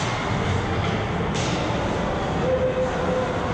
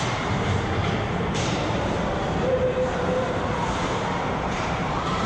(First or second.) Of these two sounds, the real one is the first